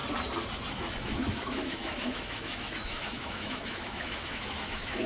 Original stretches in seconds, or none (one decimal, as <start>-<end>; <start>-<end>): 0.0-0.7